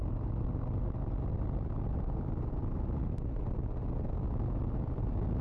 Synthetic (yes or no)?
no